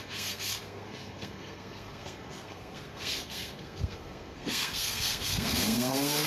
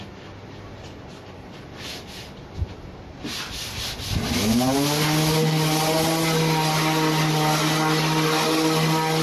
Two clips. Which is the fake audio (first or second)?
first